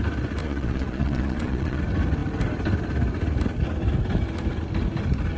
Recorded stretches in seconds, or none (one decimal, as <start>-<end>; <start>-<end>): 0.0-0.4; 1.8-5.4